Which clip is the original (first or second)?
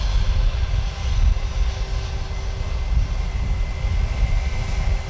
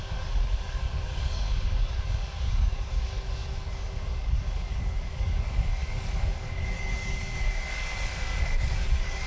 first